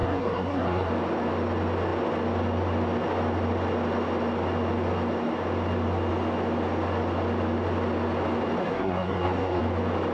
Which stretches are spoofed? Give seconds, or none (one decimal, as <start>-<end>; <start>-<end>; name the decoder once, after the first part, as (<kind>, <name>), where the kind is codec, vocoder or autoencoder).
0.0-0.9 (codec, SNAC); 8.6-9.6